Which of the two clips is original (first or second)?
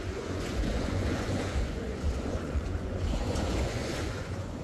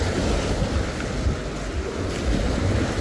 second